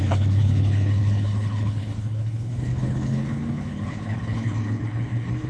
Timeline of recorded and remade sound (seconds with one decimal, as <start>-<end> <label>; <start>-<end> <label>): 0.0-5.5 remade